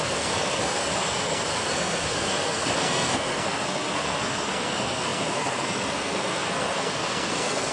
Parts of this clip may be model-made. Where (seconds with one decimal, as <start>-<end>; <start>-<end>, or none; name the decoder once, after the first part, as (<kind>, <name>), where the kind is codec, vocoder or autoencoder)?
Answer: 0.0-7.7 (codec, SNAC)